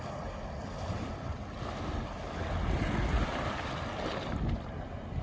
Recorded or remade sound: recorded